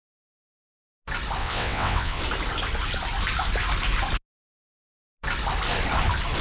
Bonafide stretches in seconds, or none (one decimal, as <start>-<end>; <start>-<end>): 0.0-1.4; 2.2-6.4